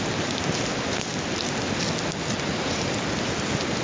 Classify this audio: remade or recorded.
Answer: recorded